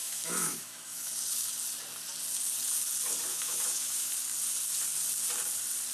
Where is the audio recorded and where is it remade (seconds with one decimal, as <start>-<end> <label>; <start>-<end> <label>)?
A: 0.0-1.1 remade; 1.1-3.3 recorded; 3.3-4.1 remade; 4.1-5.9 recorded